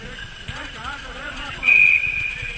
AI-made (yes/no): yes